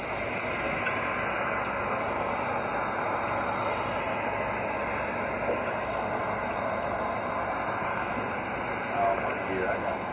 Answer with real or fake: real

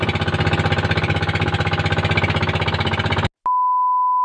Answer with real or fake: real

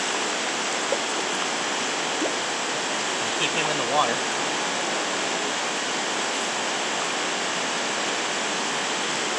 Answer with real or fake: real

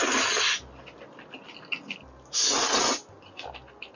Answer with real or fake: real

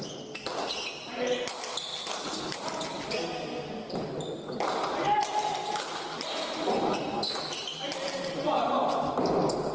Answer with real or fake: real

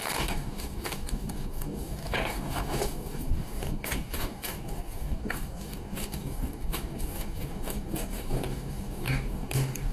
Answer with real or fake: fake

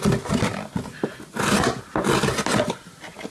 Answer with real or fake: real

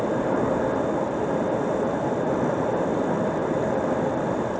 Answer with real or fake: real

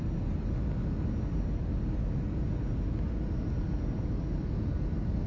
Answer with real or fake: real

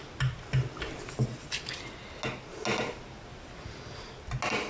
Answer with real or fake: real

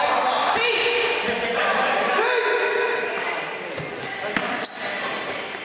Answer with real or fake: real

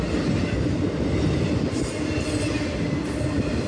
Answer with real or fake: real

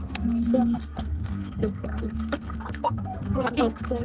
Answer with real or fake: fake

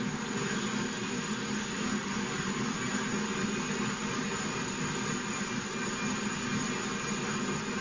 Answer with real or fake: real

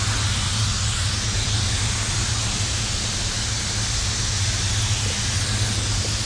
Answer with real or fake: real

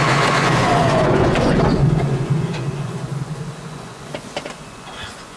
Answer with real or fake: fake